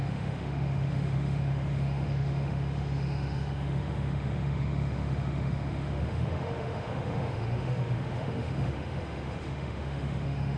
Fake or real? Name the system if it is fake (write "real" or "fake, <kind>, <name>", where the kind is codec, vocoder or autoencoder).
fake, autoencoder, DAC-VAE